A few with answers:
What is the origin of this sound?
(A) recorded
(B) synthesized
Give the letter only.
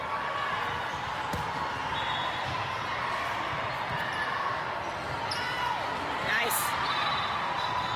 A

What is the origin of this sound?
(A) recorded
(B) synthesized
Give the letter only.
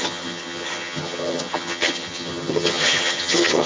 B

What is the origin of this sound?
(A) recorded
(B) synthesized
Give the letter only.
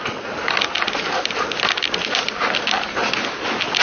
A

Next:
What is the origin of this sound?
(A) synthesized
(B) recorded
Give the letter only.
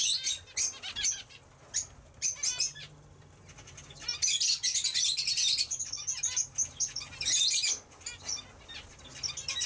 B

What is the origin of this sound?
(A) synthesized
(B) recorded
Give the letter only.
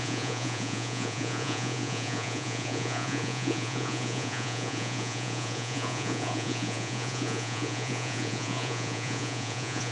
A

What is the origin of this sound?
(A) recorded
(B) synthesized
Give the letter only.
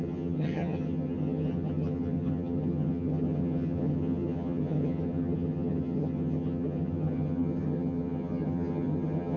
B